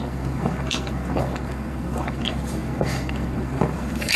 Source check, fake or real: fake